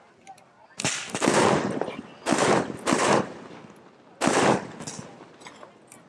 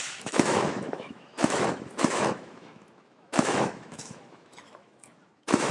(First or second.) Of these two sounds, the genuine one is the first